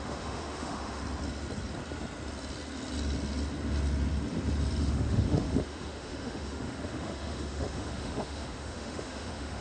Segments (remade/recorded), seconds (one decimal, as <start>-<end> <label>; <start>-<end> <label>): 0.0-1.0 remade; 1.0-4.8 recorded; 4.8-9.6 remade